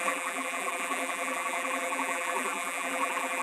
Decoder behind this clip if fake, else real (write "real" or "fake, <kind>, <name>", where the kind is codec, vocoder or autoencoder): fake, vocoder, BigVGAN v2